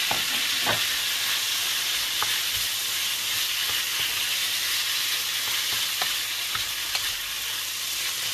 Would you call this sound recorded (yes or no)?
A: yes